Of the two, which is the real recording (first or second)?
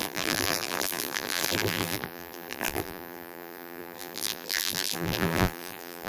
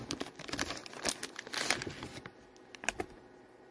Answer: second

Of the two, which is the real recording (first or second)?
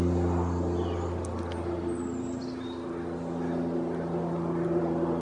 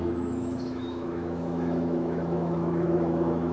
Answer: first